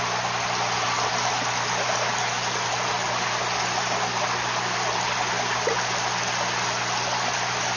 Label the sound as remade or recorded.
recorded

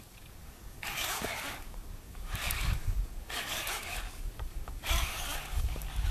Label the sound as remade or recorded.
remade